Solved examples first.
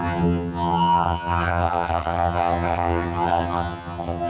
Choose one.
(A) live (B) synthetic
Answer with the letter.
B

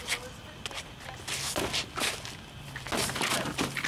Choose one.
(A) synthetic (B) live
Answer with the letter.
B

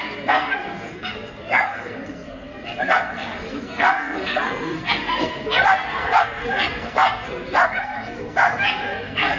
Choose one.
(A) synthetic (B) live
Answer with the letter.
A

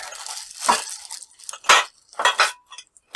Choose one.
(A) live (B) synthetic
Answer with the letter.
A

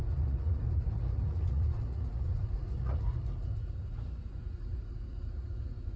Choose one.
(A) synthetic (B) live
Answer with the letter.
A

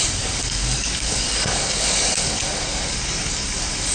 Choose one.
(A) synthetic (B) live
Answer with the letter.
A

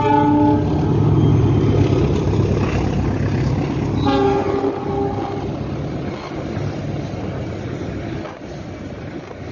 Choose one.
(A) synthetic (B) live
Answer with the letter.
B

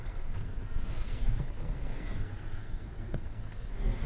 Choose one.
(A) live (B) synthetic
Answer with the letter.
B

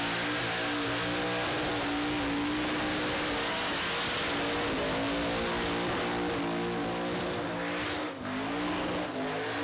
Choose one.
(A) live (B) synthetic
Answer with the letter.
A